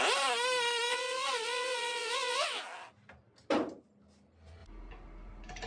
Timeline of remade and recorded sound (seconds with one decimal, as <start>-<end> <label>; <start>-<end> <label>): 0.0-0.9 recorded; 0.9-2.6 remade; 2.6-5.7 recorded